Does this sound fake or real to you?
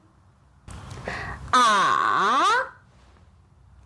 real